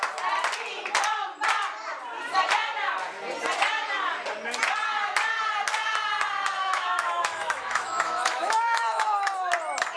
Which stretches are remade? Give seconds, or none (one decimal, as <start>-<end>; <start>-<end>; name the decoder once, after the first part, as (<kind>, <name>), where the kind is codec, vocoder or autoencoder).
6.6-9.5 (autoencoder, DAC-VAE)